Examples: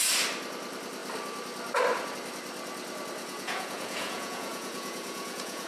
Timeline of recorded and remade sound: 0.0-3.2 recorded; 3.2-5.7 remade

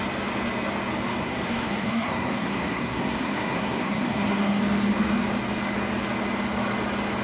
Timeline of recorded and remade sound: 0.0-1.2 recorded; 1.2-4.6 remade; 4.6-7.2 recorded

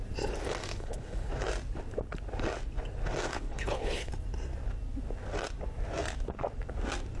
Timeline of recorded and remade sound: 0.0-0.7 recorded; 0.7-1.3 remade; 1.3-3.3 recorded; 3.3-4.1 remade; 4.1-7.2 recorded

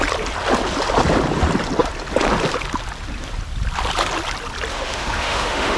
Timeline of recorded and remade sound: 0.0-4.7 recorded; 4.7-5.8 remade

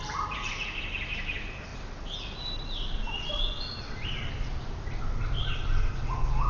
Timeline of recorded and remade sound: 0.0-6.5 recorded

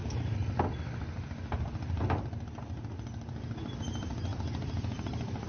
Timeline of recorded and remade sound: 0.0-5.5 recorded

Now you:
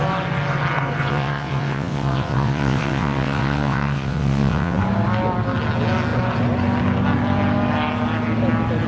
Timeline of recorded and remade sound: 0.0-1.1 recorded; 1.1-4.8 remade; 4.8-8.9 recorded

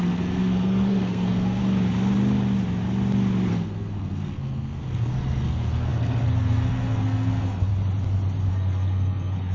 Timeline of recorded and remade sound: 0.0-1.6 remade; 1.6-3.5 recorded; 3.5-7.7 remade; 7.7-8.5 recorded; 8.5-9.5 remade